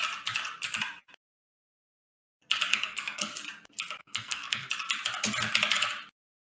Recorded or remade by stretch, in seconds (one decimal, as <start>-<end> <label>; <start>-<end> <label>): 0.0-2.7 recorded; 2.7-3.3 remade; 3.3-4.0 recorded; 4.0-4.7 remade; 4.7-6.4 recorded